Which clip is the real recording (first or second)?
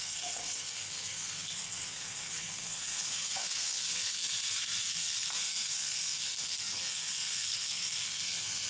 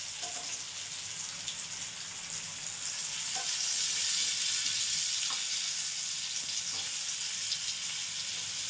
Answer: second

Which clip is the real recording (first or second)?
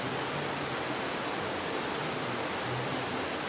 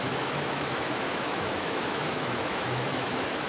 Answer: first